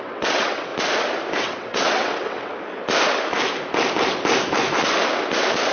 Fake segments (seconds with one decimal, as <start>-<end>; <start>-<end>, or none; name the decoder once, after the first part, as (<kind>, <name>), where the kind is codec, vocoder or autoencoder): 0.0-0.7 (vocoder, WaveNeXt); 1.4-2.5